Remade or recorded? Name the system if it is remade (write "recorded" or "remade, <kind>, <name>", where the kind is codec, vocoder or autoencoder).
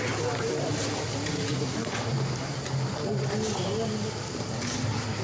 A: recorded